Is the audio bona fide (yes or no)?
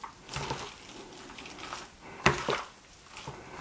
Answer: yes